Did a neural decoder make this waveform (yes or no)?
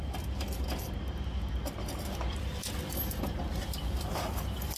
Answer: no